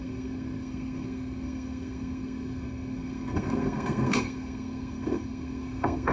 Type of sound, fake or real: fake